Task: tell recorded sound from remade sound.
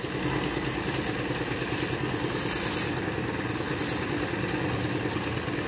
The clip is recorded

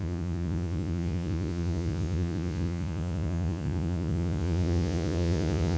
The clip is remade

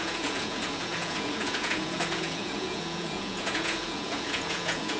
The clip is remade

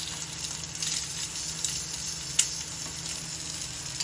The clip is recorded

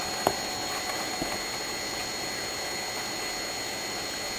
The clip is recorded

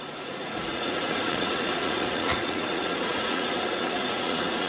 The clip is remade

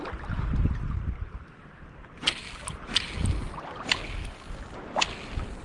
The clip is recorded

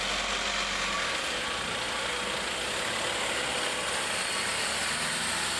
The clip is recorded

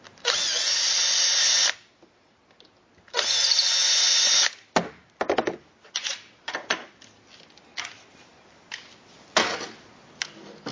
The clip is recorded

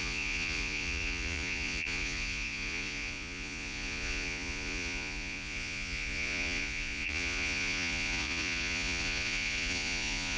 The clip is remade